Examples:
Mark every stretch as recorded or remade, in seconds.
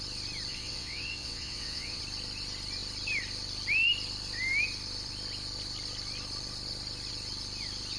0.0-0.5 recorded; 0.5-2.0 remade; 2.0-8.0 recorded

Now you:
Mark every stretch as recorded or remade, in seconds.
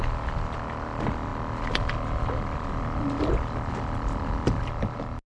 0.0-5.3 recorded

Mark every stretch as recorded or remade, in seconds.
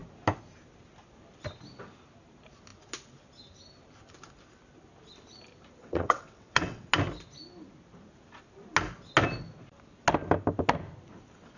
0.0-5.8 recorded; 5.8-6.9 remade; 6.9-11.6 recorded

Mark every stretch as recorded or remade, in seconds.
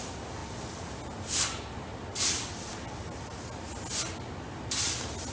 0.0-5.3 recorded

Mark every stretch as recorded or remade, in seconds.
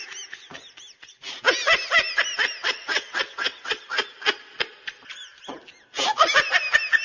0.0-2.6 recorded; 2.6-3.8 remade; 3.8-7.0 recorded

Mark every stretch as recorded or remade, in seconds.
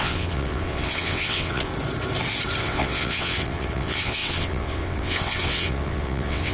0.0-1.7 remade; 1.7-2.6 recorded; 2.6-6.5 remade